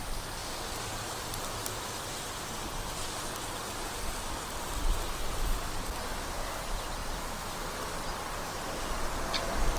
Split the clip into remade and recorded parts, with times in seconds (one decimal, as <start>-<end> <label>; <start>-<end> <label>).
0.0-0.4 recorded; 0.4-1.9 remade; 1.9-9.8 recorded